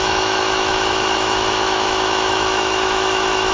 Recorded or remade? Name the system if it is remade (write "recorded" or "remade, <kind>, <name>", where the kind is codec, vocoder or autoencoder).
remade, autoencoder, DAC-VAE